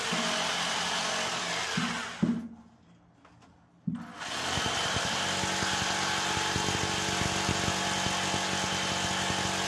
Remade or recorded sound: recorded